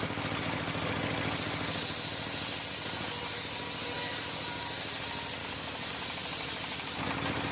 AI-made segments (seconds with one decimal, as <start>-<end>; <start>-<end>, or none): 5.4-5.9